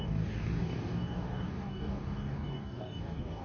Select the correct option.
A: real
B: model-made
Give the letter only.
B